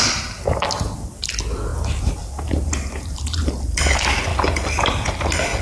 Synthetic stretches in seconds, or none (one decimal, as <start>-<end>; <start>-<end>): 1.7-3.6